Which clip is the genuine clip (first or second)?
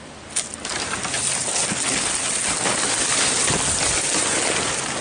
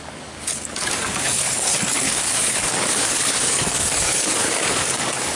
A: first